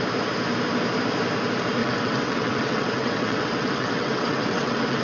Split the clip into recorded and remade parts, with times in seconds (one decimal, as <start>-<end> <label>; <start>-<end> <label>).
0.0-1.8 recorded; 1.8-5.0 remade